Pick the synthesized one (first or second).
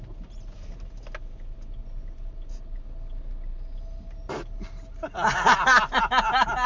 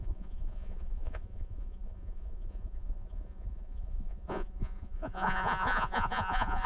second